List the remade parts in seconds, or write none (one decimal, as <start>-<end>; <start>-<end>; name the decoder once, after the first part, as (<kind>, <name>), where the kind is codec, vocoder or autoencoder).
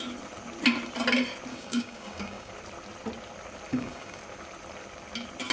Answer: 1.5-2.5 (codec, DAC); 3.7-4.2